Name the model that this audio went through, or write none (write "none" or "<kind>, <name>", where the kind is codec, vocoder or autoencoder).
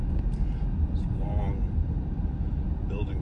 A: none